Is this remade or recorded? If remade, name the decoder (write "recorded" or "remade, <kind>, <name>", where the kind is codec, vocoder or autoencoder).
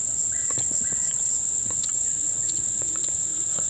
remade, vocoder, WaveNeXt